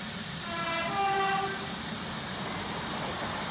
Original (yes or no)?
yes